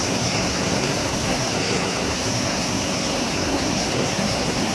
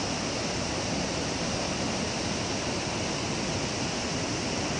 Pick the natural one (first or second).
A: second